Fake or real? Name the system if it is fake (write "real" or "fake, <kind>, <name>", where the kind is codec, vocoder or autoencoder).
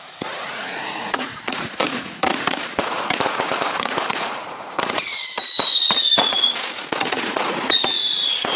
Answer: fake, vocoder, Vocos